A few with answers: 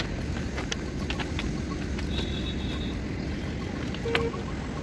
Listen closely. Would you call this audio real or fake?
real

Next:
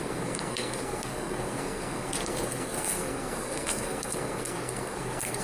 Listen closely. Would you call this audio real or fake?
fake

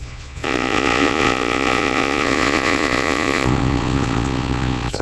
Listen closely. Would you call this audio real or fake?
fake